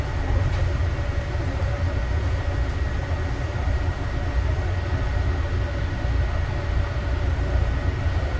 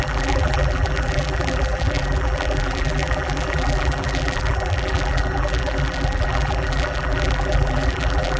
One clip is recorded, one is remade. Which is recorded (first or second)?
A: first